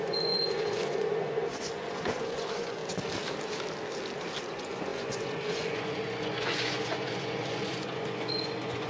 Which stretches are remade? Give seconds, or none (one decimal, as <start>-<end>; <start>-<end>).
0.0-2.8; 4.5-8.9